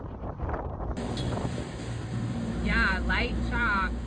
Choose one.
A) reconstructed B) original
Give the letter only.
A